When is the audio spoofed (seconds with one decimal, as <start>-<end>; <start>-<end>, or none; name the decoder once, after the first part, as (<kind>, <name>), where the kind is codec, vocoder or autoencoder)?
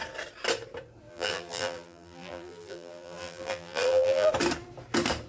1.1-4.3 (vocoder, BigVGAN v2)